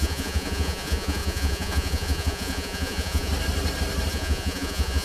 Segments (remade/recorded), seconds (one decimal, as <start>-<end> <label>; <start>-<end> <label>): 0.0-3.3 remade; 3.3-4.1 recorded; 4.1-5.0 remade